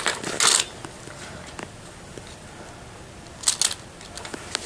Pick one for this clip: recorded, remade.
recorded